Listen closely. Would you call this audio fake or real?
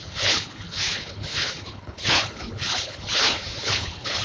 fake